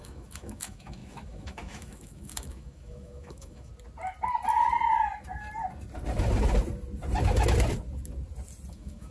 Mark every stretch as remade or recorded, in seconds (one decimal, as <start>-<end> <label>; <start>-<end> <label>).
0.0-3.7 remade; 3.7-8.7 recorded; 8.7-9.1 remade